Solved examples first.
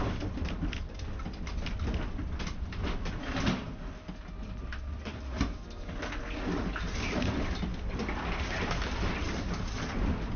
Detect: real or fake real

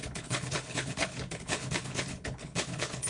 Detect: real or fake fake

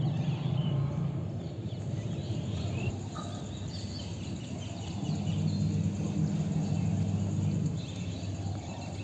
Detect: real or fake real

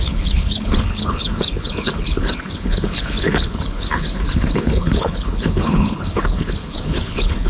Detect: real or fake fake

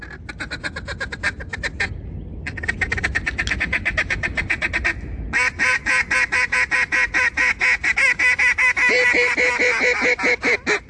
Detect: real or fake real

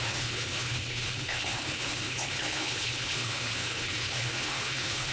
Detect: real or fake fake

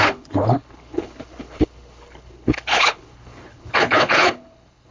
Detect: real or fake fake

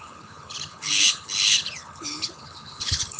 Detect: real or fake fake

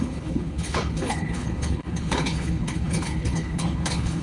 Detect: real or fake fake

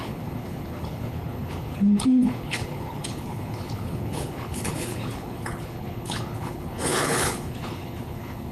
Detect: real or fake fake